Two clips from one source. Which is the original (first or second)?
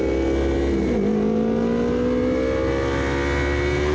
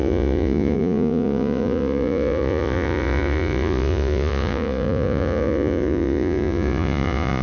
first